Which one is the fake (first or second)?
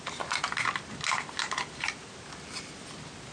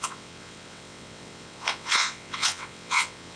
second